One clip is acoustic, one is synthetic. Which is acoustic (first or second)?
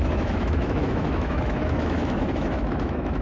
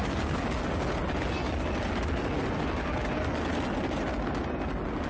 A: second